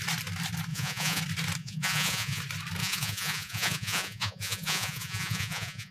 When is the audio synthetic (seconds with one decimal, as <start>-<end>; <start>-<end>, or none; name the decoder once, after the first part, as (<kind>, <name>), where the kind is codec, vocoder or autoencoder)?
0.7-1.2 (vocoder, Vocos); 1.6-2.4; 2.8-5.9